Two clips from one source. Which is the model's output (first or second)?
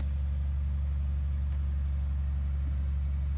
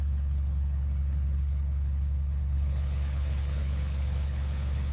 second